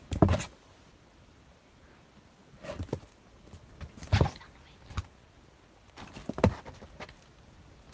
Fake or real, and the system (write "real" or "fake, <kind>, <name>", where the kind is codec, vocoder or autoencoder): real